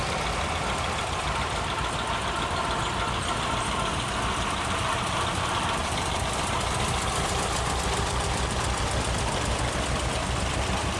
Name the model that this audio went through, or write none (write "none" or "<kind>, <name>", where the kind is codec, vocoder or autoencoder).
vocoder, BigVGAN v2